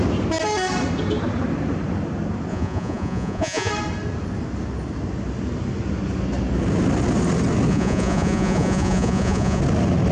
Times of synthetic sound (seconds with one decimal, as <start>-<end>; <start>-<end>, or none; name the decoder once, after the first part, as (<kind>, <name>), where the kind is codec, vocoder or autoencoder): 2.5-3.7 (vocoder, Vocos); 7.7-9.6